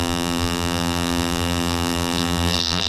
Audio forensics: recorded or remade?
remade